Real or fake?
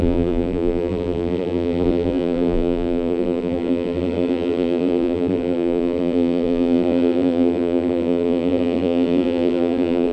fake